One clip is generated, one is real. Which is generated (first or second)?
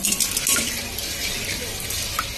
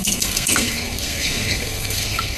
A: second